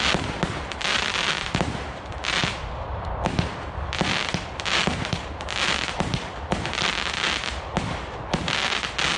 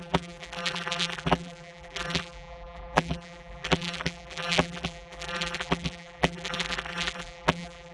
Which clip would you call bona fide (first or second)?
first